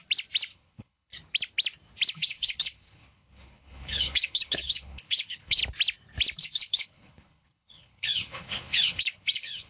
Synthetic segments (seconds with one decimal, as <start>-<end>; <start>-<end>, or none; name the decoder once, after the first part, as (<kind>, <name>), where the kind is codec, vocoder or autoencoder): 0.5-1.1 (codec, HILCodec); 2.1-5.6; 6.4-9.7